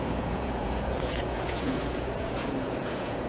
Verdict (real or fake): fake